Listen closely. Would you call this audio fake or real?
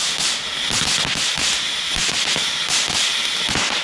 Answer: real